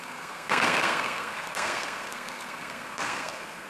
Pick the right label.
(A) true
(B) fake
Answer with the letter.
B